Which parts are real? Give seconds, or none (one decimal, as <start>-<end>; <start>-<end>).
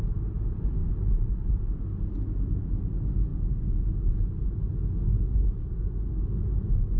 0.0-0.8; 1.6-7.0